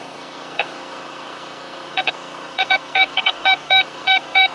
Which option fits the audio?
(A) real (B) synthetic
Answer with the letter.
B